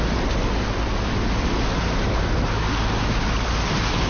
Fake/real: real